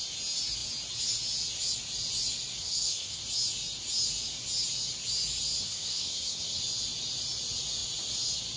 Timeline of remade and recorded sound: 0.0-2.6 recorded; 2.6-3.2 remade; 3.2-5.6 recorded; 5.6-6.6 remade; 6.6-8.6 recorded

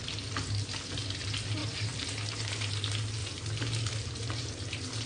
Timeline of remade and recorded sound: 0.0-1.6 recorded; 1.6-2.8 remade; 2.8-3.2 recorded; 3.2-5.1 remade

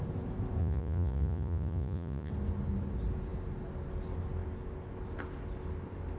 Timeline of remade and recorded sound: 0.0-0.6 recorded; 0.6-2.3 remade; 2.3-6.2 recorded

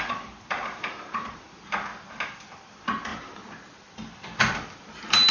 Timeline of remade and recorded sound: 0.0-1.9 remade; 1.9-2.6 recorded; 2.6-3.1 remade; 3.1-5.3 recorded

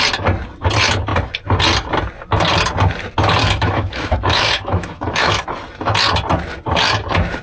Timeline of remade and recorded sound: 0.0-3.4 recorded; 3.4-5.4 remade; 5.4-7.4 recorded

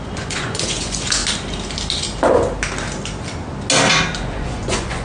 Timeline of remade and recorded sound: 0.0-1.2 remade; 1.2-4.2 recorded; 4.2-5.0 remade